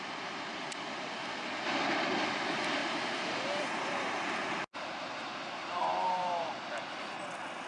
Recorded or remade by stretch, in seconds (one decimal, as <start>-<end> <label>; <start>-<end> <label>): 0.0-2.8 recorded; 2.8-6.5 remade; 6.5-7.7 recorded